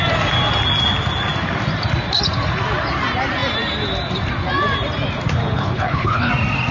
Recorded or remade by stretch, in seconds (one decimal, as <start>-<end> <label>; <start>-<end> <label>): 0.0-5.4 recorded; 5.4-6.3 remade; 6.3-6.7 recorded